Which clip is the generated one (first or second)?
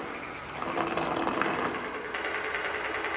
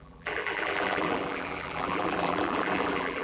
second